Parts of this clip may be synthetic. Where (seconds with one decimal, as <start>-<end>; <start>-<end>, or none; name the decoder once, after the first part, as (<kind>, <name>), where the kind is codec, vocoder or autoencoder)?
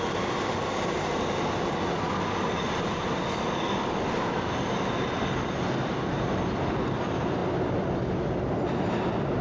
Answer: none